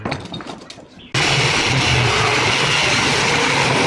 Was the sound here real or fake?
real